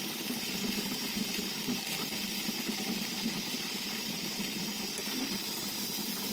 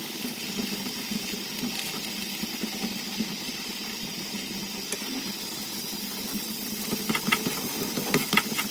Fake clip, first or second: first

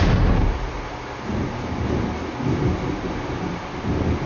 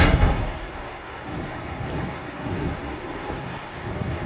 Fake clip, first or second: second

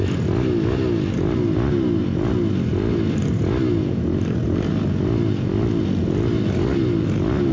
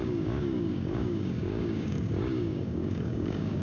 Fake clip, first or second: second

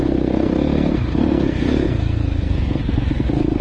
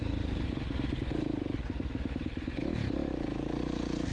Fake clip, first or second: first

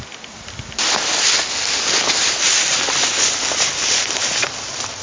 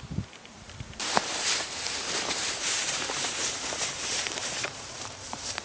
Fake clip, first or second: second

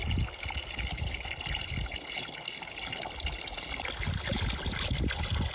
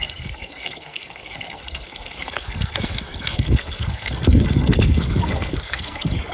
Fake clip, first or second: second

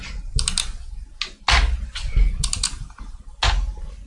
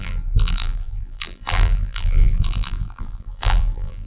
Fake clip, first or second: second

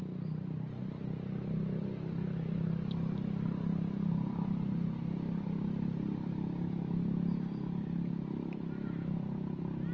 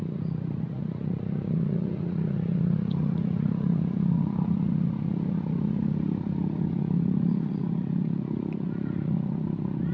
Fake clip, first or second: second